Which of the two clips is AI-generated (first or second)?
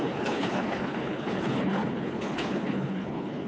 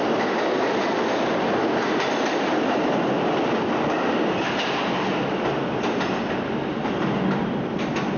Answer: first